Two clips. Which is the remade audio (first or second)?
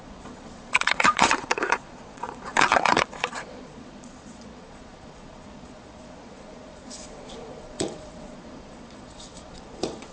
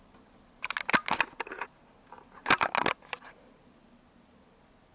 first